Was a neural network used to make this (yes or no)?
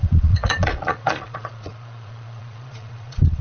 yes